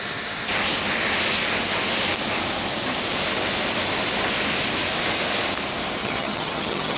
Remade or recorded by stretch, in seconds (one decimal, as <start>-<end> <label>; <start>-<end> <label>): 0.0-6.0 recorded; 6.0-7.0 remade